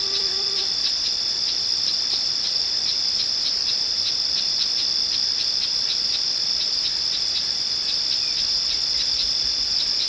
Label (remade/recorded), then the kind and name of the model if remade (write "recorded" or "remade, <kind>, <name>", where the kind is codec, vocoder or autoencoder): remade, vocoder, BigVGAN v2